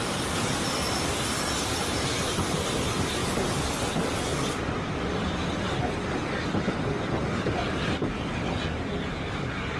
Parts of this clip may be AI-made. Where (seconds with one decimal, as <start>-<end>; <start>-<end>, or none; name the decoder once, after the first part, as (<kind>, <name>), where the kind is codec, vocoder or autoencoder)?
none